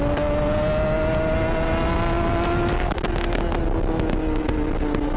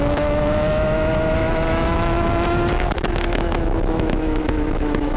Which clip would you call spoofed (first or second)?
second